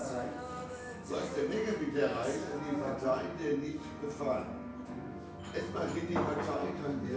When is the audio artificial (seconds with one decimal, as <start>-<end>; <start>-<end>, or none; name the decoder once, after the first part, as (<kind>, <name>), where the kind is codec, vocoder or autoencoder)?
0.0-2.6 (autoencoder, DAC-VAE); 4.7-5.4; 6.6-7.2

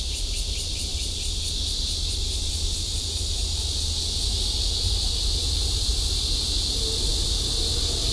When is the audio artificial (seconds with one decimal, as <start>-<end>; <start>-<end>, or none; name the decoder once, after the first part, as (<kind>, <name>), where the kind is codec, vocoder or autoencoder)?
none

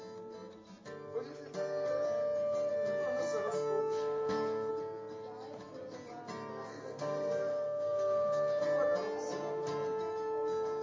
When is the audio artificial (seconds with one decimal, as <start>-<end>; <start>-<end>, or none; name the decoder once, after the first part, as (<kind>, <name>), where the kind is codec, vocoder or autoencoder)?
3.8-4.7 (codec, SNAC); 6.5-8.6

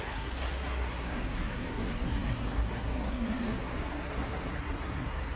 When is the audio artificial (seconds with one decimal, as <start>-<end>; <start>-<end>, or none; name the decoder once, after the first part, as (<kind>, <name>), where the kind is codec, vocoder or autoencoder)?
0.0-5.4 (codec, SNAC)

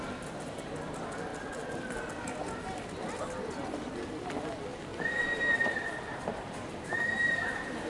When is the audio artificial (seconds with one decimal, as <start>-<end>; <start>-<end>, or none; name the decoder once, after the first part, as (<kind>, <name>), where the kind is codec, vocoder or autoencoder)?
4.9-5.8 (vocoder, BigVGAN v2); 6.3-7.9

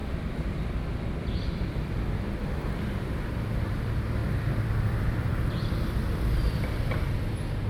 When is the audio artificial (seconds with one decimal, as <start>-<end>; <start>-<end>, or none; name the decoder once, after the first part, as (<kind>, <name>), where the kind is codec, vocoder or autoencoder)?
0.0-7.7 (vocoder, BigVGAN v2)

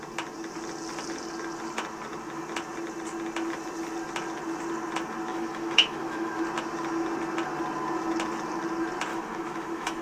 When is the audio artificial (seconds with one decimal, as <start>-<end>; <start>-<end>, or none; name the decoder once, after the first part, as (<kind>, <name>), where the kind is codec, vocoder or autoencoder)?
5.3-6.4 (autoencoder, DAC-VAE); 9.1-10.0